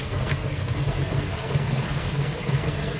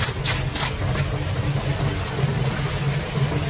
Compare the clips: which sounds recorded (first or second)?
second